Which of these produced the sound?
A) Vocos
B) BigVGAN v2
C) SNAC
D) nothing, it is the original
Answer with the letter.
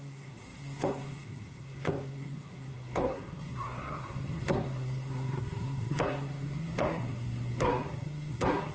C